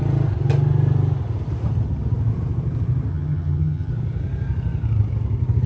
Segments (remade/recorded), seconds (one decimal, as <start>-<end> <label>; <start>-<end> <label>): 0.0-3.1 recorded; 3.1-3.9 remade; 3.9-5.7 recorded